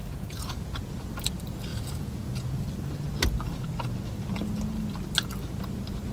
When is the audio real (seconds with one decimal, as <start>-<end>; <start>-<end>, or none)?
1.1-1.7; 2.6-6.1